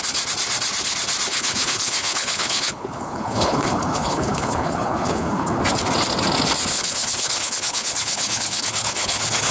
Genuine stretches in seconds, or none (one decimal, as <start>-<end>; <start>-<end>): 0.0-1.3; 5.6-6.7